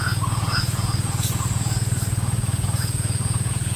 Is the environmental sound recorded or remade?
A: remade